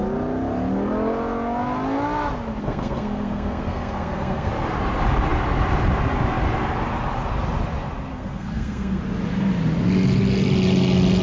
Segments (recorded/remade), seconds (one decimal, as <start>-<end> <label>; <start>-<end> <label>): 0.0-2.6 recorded; 2.6-4.5 remade; 4.5-8.1 recorded; 8.1-9.0 remade; 9.0-11.2 recorded